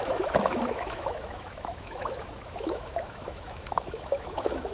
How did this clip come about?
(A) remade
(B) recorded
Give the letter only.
A